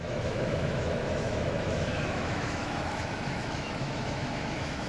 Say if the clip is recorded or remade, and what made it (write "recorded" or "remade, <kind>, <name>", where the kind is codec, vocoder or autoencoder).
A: remade, autoencoder, DAC-VAE